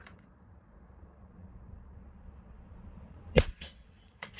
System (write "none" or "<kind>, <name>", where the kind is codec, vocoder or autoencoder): vocoder, Vocos